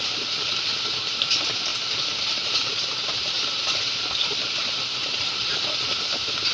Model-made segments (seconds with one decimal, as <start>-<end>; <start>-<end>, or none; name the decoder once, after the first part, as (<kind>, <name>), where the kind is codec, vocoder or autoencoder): 1.7-5.2 (vocoder, BigVGAN v2)